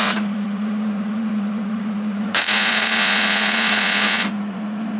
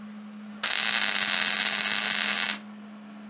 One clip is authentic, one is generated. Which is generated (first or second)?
first